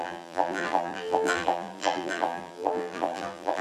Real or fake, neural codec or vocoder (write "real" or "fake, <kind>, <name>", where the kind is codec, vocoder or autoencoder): fake, vocoder, BigVGAN v2